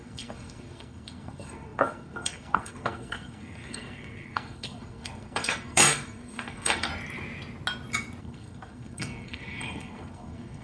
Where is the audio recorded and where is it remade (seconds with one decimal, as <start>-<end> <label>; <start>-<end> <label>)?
0.0-6.9 remade; 6.9-8.2 recorded; 8.2-10.6 remade